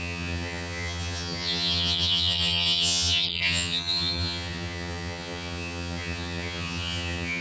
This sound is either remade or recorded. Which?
remade